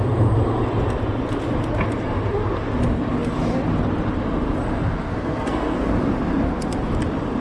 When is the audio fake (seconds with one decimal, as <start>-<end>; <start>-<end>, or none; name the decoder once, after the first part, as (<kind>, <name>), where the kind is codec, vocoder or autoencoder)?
5.1-5.9 (codec, SNAC)